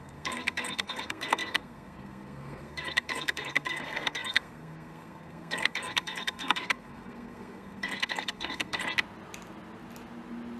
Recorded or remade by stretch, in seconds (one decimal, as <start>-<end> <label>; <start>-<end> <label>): 0.0-8.8 remade; 8.8-10.6 recorded